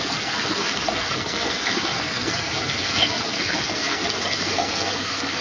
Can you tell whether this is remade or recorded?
remade